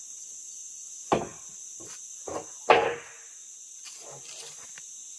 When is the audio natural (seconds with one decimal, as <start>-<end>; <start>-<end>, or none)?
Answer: 0.0-5.2